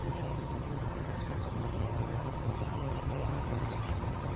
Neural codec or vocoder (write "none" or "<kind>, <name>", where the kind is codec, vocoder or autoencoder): vocoder, HiFi-GAN